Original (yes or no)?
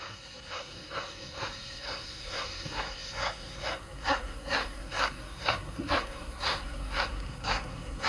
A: no